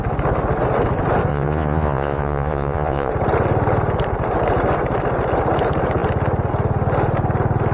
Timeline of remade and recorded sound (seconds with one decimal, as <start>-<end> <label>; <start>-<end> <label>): 0.0-1.3 recorded; 1.3-3.1 remade; 3.1-7.7 recorded